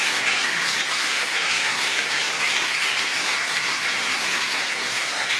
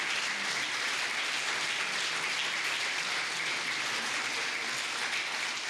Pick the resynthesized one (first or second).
first